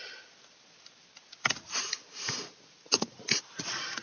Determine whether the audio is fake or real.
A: real